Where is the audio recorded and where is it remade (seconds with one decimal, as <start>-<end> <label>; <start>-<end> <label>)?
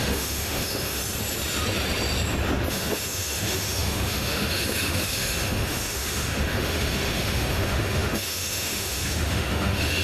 0.0-1.0 remade; 1.0-2.7 recorded; 2.7-10.0 remade